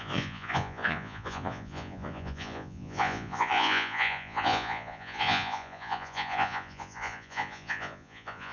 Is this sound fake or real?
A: fake